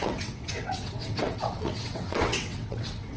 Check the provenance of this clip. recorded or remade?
remade